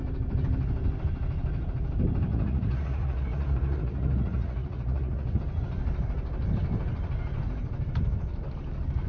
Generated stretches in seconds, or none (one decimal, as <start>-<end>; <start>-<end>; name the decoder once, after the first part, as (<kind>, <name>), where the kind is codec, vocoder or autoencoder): 2.3-5.4 (vocoder, Vocos)